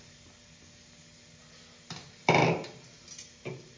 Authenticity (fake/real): real